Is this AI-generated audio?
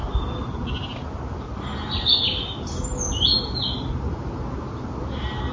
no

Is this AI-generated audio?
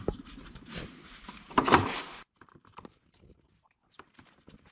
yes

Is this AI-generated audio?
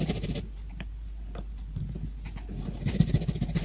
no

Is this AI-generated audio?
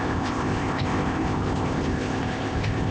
yes